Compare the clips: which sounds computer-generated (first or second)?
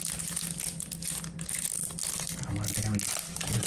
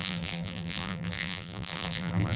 second